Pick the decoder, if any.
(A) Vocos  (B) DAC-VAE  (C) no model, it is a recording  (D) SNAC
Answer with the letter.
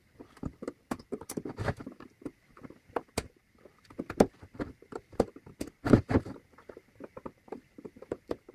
C